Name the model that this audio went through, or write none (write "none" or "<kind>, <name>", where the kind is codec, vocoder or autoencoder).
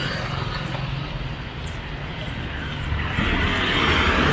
none